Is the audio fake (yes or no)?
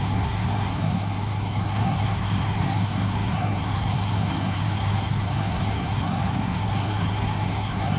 yes